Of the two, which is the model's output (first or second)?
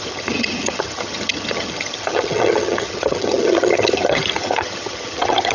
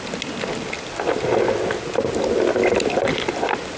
first